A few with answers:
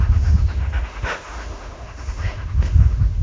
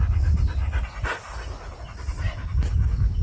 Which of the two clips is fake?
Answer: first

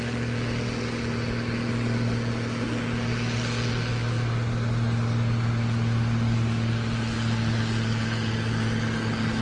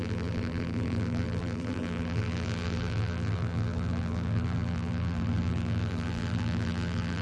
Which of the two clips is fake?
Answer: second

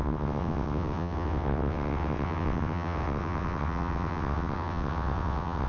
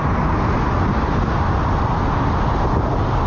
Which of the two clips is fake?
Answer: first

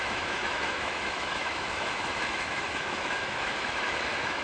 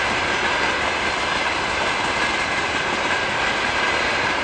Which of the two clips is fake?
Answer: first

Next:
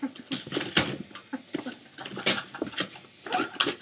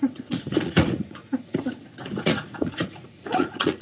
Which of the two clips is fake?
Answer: second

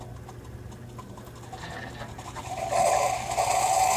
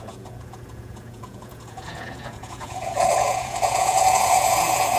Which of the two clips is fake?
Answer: second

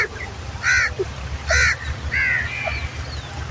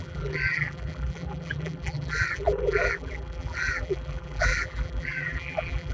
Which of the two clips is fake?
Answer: second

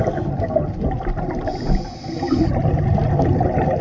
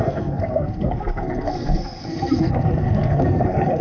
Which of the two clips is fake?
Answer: second